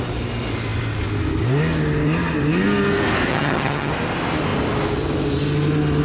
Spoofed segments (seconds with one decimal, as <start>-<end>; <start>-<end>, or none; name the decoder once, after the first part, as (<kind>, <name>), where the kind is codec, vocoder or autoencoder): 3.3-3.9 (vocoder, HiFi-GAN)